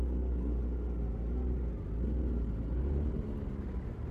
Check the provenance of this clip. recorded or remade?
recorded